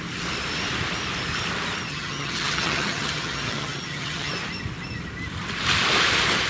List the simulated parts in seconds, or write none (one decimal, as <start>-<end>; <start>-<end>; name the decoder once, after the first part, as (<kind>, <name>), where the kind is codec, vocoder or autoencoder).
1.9-4.3 (vocoder, HiFi-GAN)